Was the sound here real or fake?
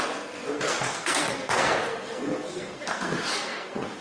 fake